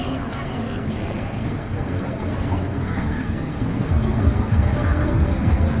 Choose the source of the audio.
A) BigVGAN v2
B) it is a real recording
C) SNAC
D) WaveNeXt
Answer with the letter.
C